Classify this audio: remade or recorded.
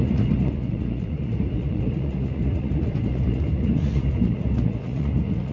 remade